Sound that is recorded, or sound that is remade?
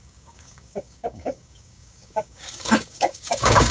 remade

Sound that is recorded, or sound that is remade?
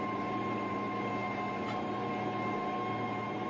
recorded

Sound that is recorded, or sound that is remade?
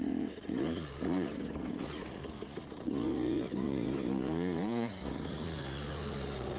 remade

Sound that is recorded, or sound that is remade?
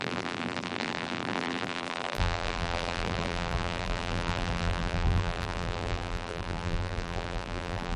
remade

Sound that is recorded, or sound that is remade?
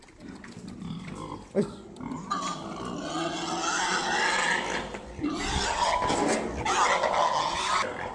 recorded